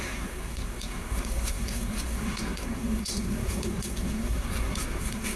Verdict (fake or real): fake